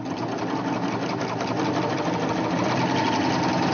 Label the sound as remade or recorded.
recorded